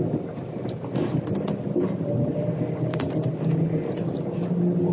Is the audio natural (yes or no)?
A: yes